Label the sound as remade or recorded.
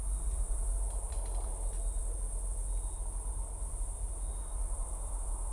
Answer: recorded